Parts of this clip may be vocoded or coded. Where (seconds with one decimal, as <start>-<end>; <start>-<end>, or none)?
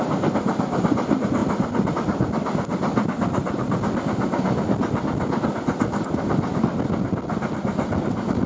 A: none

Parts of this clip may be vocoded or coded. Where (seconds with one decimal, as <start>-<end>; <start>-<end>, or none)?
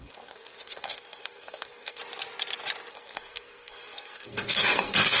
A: 0.0-2.0; 2.9-5.2